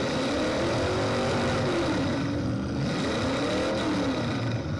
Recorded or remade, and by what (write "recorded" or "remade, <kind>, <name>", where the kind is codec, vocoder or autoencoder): recorded